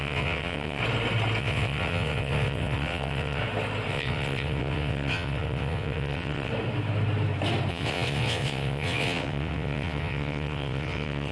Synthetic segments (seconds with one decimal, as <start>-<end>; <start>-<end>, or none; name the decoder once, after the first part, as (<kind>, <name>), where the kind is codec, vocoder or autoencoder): 0.0-0.8 (vocoder, WaveNeXt); 1.4-3.4; 3.9-6.5; 7.7-11.3